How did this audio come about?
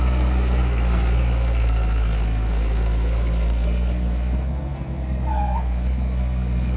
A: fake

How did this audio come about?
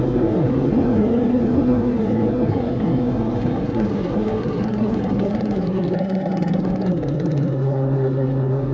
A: fake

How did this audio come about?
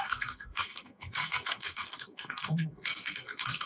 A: fake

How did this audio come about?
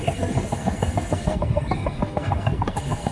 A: fake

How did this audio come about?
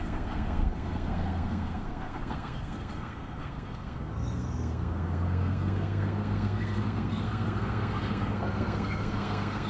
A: fake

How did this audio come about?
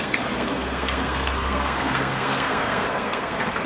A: fake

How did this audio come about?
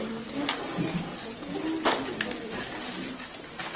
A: real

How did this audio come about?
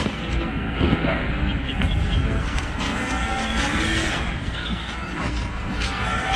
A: fake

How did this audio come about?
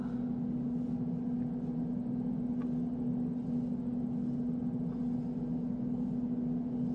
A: real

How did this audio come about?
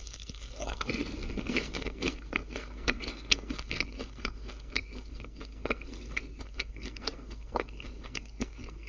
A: fake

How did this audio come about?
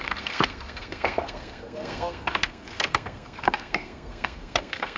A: fake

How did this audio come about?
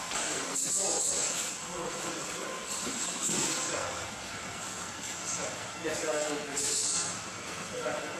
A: fake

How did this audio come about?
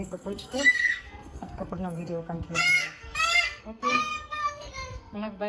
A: fake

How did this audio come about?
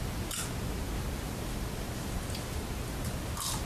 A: real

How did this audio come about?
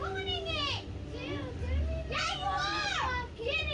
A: real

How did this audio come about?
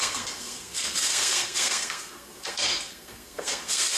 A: fake